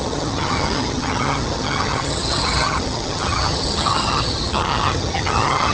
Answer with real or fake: fake